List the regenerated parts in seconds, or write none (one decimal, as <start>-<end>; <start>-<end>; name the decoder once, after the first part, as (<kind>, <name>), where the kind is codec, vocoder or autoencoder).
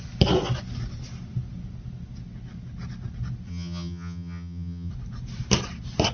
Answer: 3.5-4.9 (vocoder, HiFi-GAN)